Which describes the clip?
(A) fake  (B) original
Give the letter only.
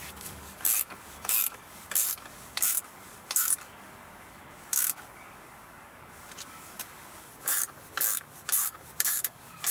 A